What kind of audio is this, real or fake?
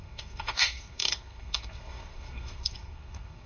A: fake